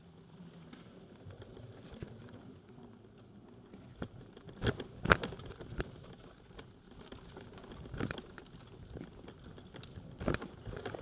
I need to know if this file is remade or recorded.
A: recorded